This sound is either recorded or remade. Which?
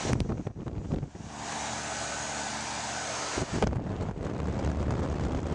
remade